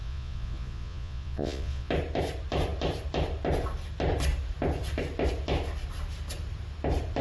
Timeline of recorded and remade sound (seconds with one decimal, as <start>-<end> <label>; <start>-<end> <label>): 0.0-1.9 remade; 1.9-7.2 recorded